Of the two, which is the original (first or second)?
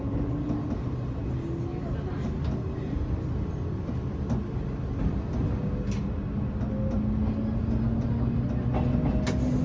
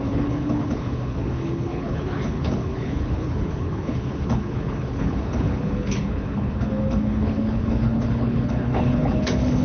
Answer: first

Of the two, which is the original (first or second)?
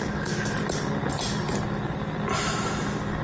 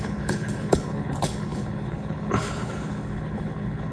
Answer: first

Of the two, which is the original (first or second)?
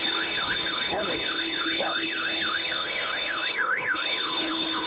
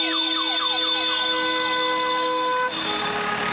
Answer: second